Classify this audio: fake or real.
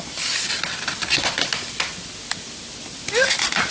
real